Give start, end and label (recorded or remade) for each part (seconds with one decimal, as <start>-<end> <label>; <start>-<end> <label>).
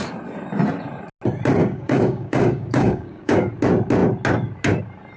0.0-1.6 recorded; 1.6-3.5 remade; 3.5-5.2 recorded